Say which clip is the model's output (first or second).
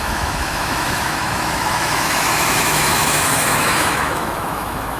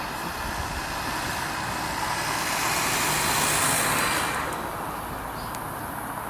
first